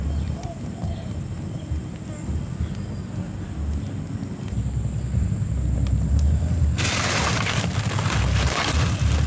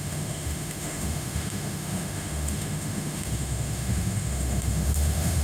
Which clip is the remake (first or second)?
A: second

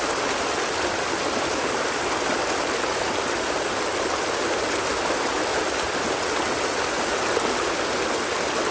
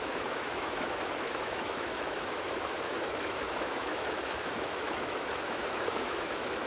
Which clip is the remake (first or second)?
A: second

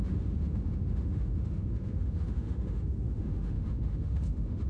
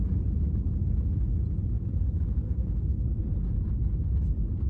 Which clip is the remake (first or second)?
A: first